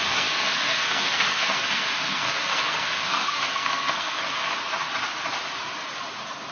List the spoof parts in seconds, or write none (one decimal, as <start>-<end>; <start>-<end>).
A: 0.0-4.4